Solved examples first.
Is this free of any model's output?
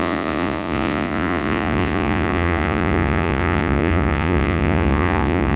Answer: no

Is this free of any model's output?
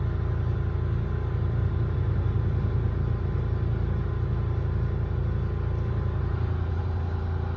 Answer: yes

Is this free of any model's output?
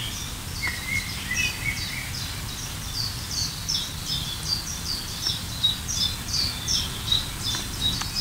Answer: yes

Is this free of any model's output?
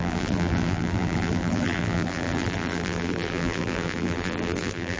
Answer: no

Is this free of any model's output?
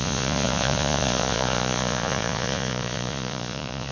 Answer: no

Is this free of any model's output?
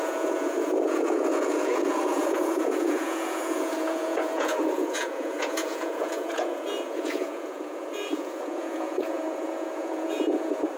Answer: no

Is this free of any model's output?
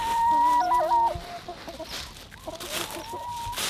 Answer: yes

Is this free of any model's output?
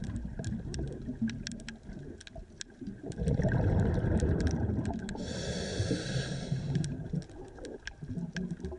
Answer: yes